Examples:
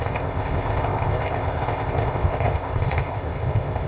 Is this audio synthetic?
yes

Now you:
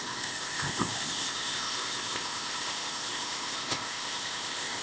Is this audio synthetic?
yes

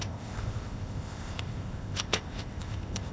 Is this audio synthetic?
yes